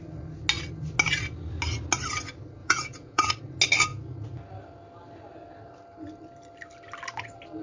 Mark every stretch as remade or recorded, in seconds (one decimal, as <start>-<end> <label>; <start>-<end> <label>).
0.0-2.6 recorded; 2.6-3.3 remade; 3.3-7.6 recorded